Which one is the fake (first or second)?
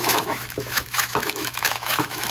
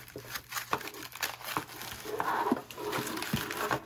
first